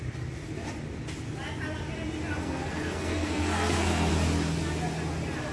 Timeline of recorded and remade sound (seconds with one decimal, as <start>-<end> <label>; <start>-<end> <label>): 0.0-2.3 recorded; 2.3-4.1 remade; 4.1-5.5 recorded